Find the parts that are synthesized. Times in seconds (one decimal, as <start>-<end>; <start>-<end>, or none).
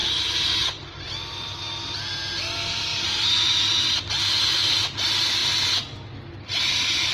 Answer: 0.0-1.0; 2.9-3.7